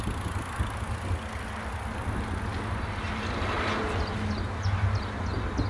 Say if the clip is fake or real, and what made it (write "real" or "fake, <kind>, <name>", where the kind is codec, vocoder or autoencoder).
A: real